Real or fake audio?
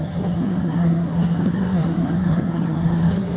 fake